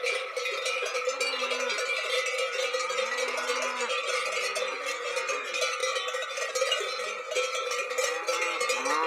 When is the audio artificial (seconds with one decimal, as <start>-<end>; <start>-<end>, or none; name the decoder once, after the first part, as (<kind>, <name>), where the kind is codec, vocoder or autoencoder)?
none